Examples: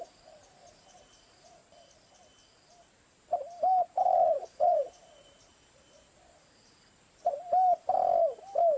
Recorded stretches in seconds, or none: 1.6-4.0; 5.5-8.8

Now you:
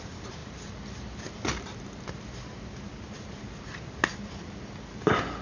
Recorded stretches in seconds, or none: 0.0-5.4

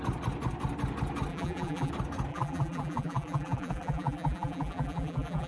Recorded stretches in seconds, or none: 0.0-1.3; 1.9-2.3